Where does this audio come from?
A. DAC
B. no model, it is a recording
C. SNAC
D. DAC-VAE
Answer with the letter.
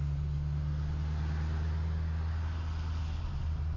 B